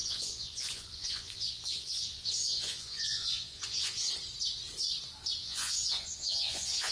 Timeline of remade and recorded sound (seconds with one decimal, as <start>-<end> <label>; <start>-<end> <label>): 0.0-4.1 remade; 4.1-5.4 recorded; 5.4-6.9 remade